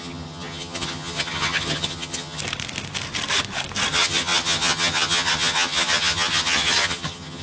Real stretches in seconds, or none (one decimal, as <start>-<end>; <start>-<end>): 2.4-3.9